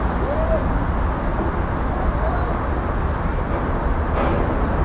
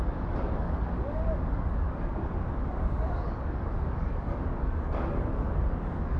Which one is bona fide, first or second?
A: first